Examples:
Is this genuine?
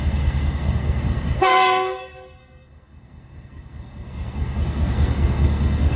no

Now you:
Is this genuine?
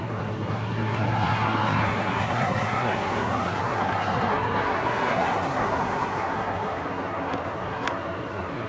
no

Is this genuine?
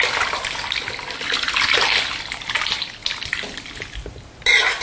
yes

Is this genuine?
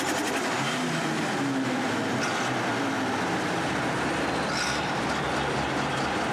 yes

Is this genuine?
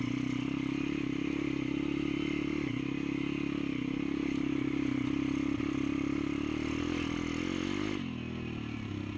yes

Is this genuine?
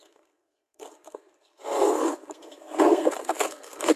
no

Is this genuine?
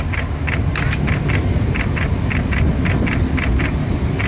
yes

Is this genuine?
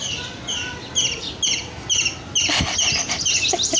yes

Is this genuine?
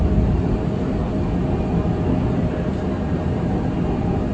yes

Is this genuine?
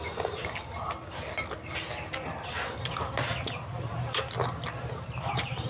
yes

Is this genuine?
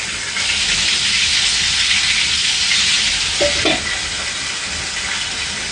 yes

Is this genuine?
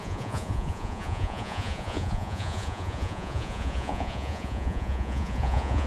no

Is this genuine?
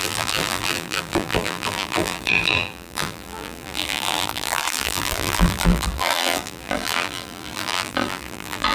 no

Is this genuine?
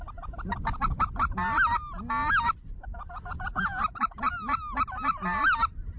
yes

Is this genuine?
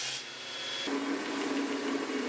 yes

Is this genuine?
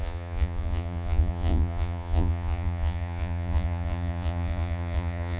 no